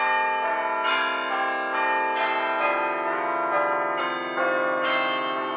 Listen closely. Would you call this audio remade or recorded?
recorded